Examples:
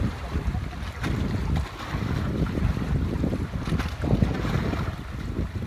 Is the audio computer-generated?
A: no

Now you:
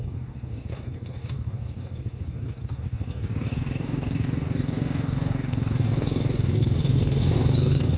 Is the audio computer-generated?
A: yes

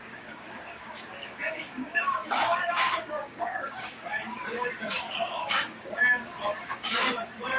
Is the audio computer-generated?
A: yes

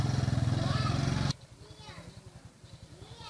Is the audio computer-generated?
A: no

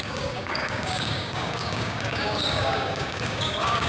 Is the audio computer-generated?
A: yes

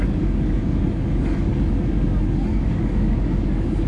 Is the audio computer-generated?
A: yes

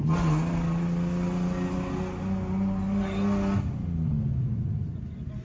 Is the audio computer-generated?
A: no